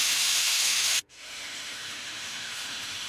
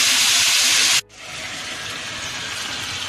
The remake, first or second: first